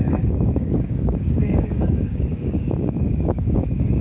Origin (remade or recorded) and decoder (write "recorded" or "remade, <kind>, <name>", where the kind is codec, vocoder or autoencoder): remade, codec, DAC